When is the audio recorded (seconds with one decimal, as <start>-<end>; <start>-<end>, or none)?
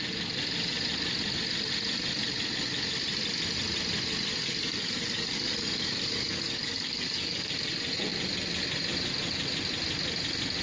0.0-4.4; 7.5-10.6